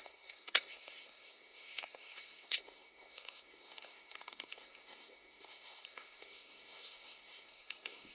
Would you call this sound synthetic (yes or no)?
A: yes